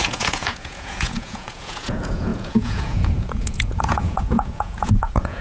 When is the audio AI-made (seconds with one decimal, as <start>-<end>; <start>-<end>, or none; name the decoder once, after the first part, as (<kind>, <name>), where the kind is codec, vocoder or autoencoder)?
0.0-5.4 (vocoder, Vocos)